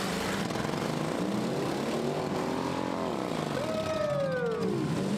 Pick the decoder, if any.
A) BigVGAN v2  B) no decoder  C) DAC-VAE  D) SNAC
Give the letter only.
B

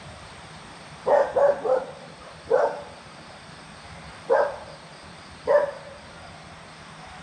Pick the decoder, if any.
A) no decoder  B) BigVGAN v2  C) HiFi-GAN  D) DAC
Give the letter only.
B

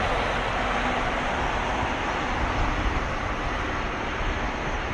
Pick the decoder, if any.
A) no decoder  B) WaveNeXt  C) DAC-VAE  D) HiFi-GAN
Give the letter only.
A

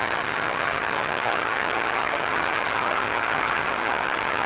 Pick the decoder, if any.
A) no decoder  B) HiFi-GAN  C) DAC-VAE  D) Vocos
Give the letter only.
B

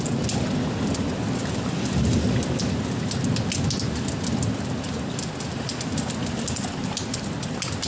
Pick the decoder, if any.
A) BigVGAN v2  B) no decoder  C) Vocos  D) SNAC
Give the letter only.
B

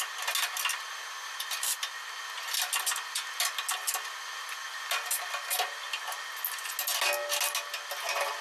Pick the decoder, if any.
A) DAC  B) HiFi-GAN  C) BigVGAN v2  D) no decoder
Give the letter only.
D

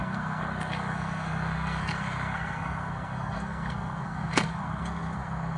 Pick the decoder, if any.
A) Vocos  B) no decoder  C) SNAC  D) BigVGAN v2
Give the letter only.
C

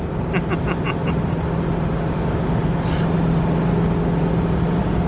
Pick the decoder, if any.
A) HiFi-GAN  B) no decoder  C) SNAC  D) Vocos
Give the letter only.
B